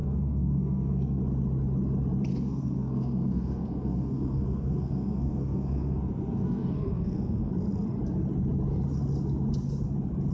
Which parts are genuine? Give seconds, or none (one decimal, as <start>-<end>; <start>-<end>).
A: 1.2-2.3; 7.5-10.3